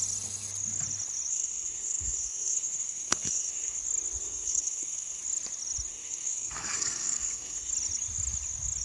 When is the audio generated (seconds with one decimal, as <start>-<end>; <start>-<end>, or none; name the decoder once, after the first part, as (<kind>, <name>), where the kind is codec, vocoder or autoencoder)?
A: 1.3-3.8 (codec, SNAC); 4.2-5.2; 5.9-7.7